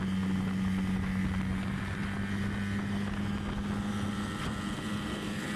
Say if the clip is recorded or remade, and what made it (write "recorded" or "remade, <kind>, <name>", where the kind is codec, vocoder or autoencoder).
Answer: recorded